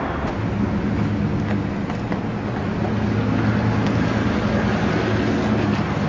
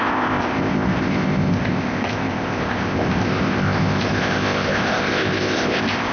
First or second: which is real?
first